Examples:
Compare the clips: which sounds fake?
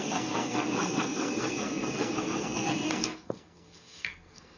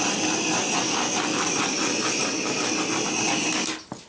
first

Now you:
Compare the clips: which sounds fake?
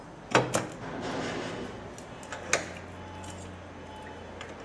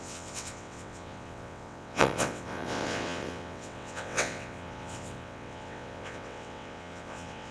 second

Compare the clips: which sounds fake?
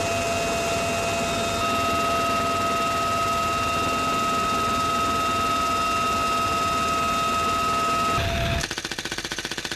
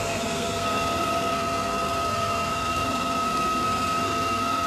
second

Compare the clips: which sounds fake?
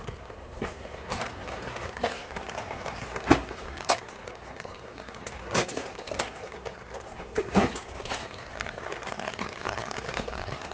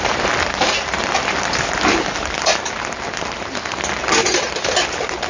first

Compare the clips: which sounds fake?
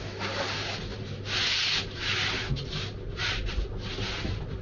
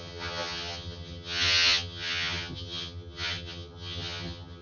second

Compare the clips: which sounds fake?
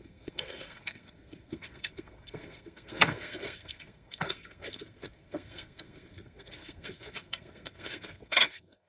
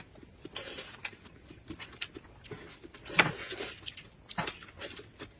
first